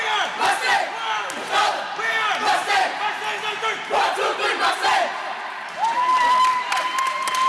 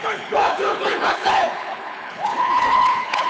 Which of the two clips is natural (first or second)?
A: first